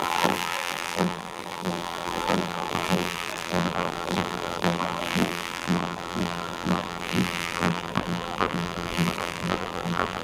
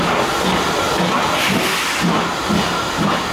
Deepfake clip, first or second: first